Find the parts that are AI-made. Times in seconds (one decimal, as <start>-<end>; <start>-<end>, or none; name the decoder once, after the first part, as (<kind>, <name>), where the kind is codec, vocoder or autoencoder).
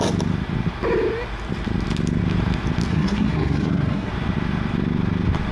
2.9-4.1 (codec, SNAC)